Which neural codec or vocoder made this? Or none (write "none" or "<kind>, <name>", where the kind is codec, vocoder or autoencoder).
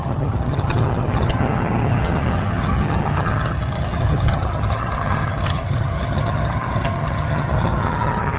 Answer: vocoder, HiFi-GAN